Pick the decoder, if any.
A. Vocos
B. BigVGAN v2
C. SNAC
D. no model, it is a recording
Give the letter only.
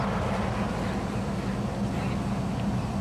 D